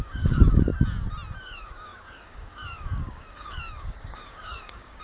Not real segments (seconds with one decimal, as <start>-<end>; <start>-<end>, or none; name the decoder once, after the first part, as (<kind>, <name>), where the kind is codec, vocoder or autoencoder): 0.0-0.7 (codec, DAC); 1.4-5.0